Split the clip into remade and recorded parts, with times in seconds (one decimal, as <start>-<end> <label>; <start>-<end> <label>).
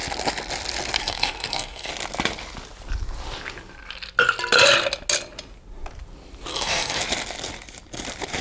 0.0-1.0 recorded; 1.0-1.9 remade; 1.9-6.5 recorded; 6.5-7.0 remade; 7.0-8.4 recorded